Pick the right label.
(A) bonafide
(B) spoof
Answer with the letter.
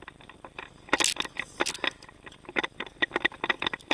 A